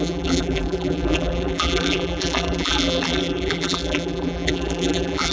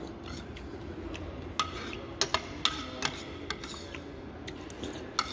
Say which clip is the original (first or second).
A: second